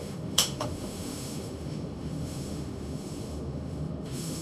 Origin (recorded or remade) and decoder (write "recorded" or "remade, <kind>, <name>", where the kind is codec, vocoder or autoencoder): remade, autoencoder, DAC-VAE